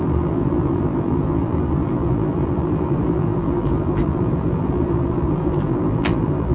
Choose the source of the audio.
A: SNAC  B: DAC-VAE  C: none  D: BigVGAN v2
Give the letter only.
D